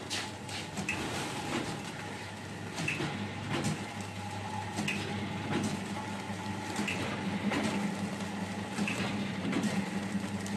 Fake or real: real